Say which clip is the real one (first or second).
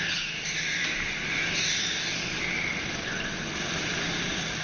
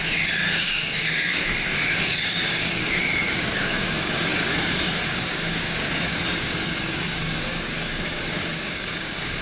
first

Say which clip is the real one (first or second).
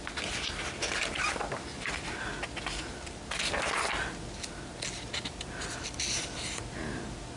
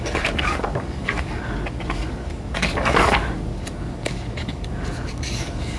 first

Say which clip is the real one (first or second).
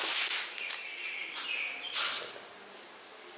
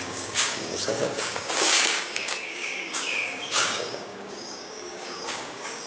first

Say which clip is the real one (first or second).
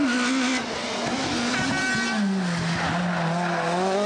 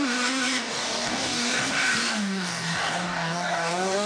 first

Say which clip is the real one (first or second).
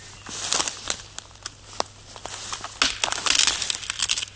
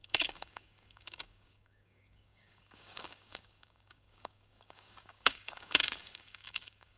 first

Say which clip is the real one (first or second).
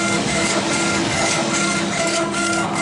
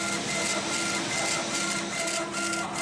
second